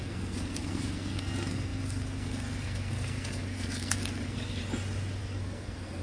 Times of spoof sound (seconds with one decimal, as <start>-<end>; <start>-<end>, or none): 0.0-4.6; 5.2-6.0